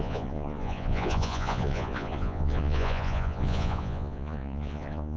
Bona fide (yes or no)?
no